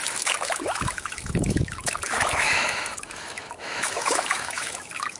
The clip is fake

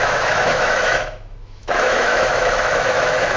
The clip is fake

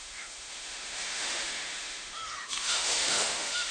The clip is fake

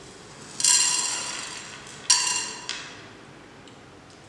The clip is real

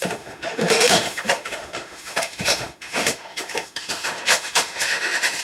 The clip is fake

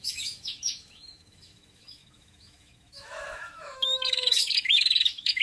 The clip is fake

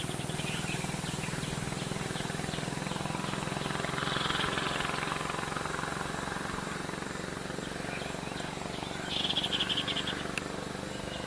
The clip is real